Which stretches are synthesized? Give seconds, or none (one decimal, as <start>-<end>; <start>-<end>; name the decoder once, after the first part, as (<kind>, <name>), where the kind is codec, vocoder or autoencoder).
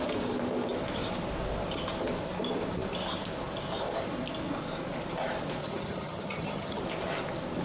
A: 5.6-6.8 (vocoder, HiFi-GAN)